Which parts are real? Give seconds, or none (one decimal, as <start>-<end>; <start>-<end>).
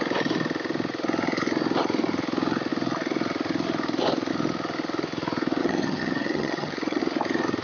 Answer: 0.0-5.6; 7.0-7.6